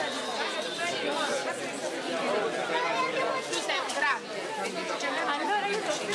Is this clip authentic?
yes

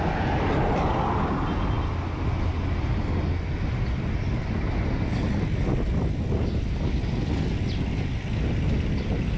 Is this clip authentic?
yes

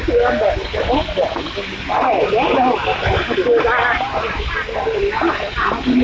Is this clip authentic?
yes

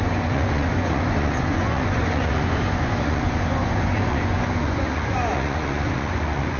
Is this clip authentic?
no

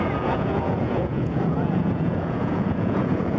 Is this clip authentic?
no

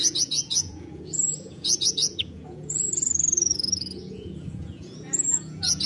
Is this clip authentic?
no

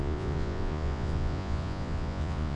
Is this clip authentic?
no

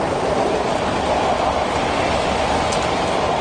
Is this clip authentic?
yes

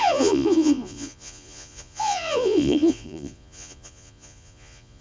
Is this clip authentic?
no